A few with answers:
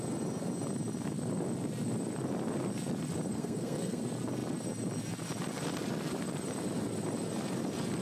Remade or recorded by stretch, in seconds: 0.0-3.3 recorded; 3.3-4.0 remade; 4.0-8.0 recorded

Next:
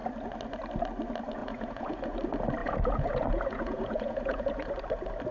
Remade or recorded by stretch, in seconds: 0.0-1.4 recorded; 1.4-2.0 remade; 2.0-2.6 recorded; 2.6-4.7 remade; 4.7-5.3 recorded

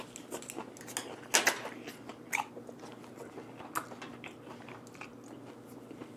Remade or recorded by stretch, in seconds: 0.0-6.2 recorded

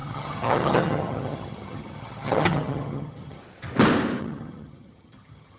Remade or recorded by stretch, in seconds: 0.0-3.4 remade; 3.4-4.2 recorded; 4.2-5.6 remade